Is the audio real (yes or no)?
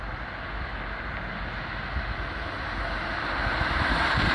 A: yes